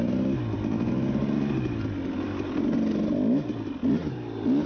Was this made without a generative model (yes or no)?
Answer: yes